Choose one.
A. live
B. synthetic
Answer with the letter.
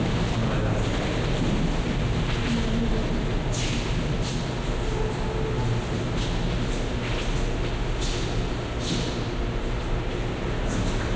A